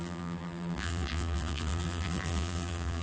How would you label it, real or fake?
fake